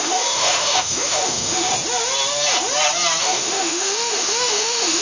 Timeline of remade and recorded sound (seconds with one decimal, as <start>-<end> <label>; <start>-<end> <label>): 0.0-1.7 remade; 1.7-3.2 recorded; 3.2-5.0 remade